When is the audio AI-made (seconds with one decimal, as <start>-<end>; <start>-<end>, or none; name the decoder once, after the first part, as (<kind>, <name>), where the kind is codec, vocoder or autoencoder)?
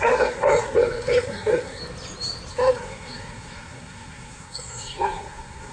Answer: 0.0-1.8 (codec, SNAC); 2.5-5.7